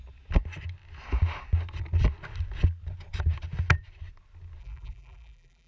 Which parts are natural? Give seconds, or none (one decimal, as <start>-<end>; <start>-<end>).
0.0-4.6